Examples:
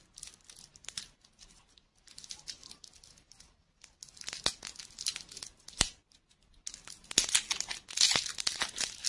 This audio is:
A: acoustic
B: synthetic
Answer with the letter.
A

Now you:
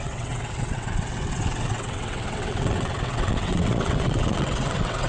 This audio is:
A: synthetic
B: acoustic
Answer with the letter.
A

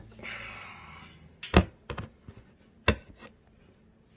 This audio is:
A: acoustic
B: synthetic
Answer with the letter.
A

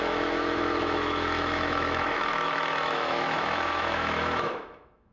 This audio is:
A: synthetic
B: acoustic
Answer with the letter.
A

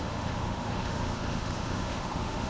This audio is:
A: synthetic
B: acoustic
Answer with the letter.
A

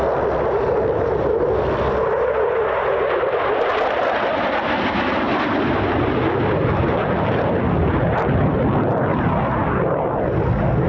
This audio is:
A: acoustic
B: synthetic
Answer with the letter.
A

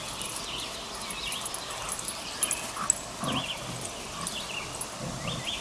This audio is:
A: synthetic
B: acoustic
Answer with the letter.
B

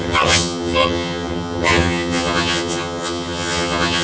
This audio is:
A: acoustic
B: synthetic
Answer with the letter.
B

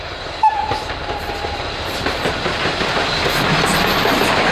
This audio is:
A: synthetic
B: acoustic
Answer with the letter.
B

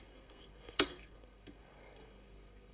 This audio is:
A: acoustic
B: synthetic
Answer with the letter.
B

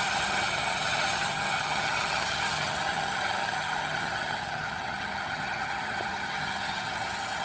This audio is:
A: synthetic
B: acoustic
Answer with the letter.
A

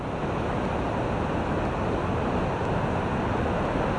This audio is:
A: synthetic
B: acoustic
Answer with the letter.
B